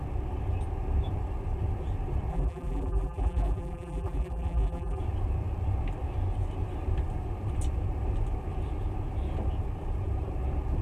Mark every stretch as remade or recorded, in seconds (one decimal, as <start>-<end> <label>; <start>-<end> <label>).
0.0-2.3 recorded; 2.3-5.0 remade; 5.0-10.8 recorded